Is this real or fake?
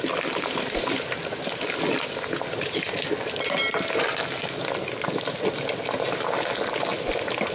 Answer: real